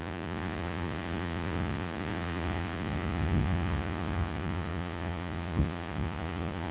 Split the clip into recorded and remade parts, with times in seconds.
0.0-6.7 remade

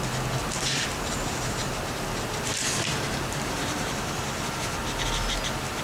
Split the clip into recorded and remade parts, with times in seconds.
0.0-0.4 recorded; 0.4-3.9 remade; 3.9-5.8 recorded

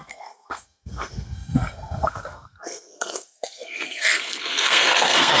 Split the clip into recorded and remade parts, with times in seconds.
0.0-5.4 remade